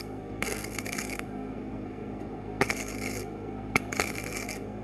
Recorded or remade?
remade